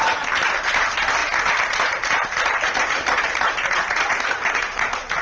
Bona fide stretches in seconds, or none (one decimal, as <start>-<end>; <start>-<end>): 0.0-5.2